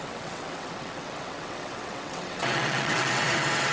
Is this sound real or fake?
fake